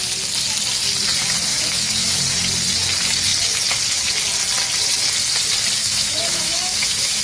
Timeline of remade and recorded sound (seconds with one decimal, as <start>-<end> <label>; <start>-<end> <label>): 0.0-1.5 recorded; 1.5-2.2 remade; 2.2-5.8 recorded; 5.8-7.2 remade